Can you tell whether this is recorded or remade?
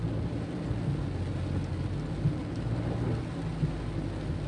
recorded